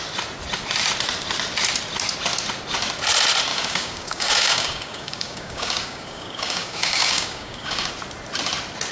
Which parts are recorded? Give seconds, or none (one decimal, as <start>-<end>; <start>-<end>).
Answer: 0.0-3.5; 7.9-8.9